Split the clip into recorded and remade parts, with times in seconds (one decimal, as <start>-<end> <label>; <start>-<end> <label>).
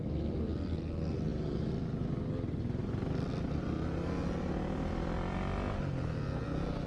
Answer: 0.0-6.9 recorded